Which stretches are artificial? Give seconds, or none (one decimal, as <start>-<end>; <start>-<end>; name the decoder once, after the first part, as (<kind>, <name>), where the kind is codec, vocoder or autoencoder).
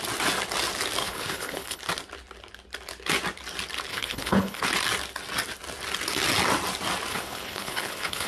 1.0-1.8 (codec, HILCodec); 3.9-4.6; 7.1-8.3